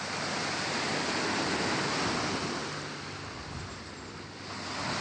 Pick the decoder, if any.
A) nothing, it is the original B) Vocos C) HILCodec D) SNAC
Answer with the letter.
A